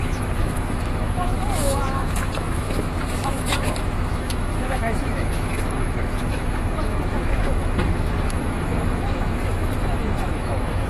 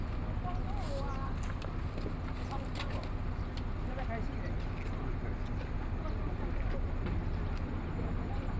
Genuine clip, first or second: second